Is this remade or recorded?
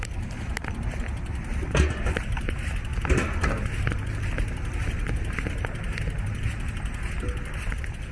recorded